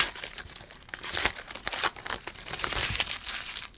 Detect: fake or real fake